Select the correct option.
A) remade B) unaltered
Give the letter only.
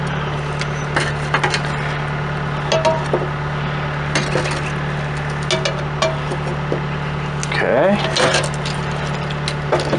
B